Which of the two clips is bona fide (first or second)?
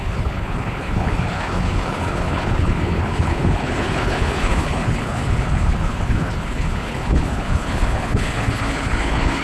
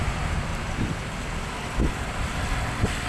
second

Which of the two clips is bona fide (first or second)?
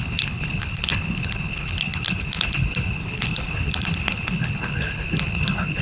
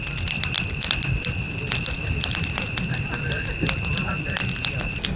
second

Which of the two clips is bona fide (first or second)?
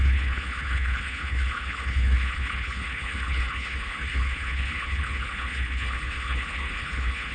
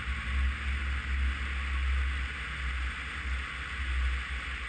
second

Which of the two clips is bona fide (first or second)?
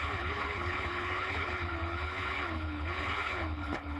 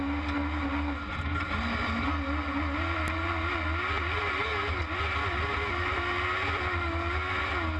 second